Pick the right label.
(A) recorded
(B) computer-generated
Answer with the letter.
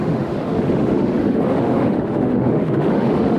B